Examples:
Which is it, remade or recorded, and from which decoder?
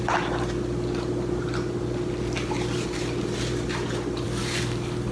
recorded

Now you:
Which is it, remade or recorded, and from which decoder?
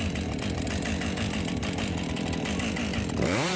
remade, vocoder, BigVGAN v2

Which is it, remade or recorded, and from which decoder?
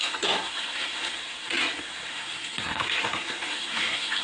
remade, codec, SNAC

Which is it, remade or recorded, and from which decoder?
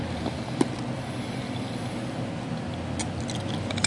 recorded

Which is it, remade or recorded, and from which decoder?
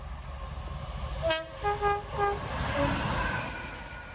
recorded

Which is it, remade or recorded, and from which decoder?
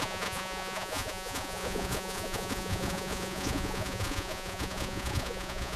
remade, vocoder, Vocos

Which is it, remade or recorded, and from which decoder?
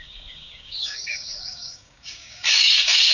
remade, codec, DAC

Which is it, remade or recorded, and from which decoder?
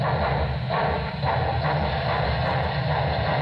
recorded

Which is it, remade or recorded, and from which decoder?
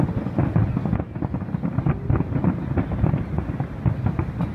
recorded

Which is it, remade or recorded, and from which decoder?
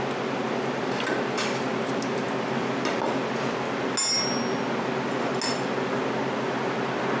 recorded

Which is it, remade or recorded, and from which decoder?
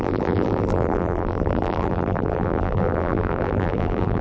remade, vocoder, BigVGAN v2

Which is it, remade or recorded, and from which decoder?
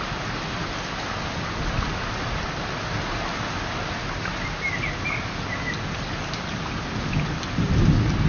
recorded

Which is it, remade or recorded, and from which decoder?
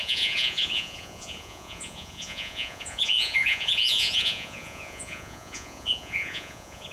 remade, vocoder, Vocos